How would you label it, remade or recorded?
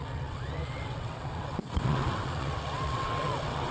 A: remade